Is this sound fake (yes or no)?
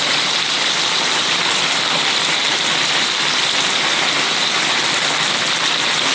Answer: no